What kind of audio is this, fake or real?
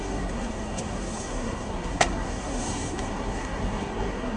fake